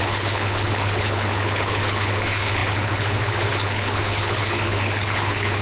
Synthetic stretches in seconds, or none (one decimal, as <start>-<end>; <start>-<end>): 0.0-5.6